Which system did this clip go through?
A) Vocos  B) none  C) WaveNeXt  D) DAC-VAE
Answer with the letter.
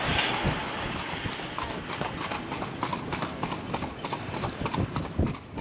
B